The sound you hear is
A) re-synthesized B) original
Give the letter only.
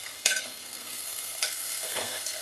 A